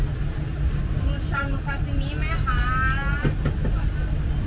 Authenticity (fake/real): real